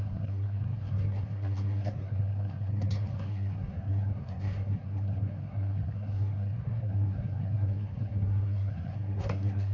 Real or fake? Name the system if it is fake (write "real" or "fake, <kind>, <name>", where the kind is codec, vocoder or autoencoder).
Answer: fake, codec, SNAC